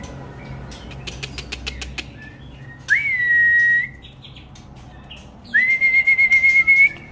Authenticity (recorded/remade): recorded